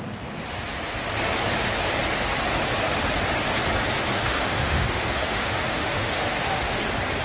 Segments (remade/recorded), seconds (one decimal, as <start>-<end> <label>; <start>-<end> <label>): 0.0-4.1 recorded; 4.1-6.8 remade; 6.8-7.2 recorded